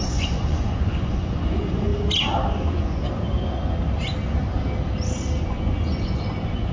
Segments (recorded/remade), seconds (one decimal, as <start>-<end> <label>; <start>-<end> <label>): 0.0-1.9 remade; 1.9-2.5 recorded; 2.5-3.0 remade; 3.0-5.4 recorded; 5.4-6.7 remade